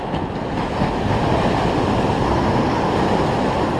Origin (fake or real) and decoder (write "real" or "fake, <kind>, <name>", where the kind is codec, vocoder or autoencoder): real